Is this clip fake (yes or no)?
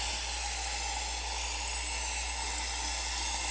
no